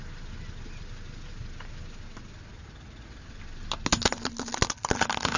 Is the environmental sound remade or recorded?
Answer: recorded